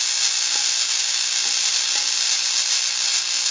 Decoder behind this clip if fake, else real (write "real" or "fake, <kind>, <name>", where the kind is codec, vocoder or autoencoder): real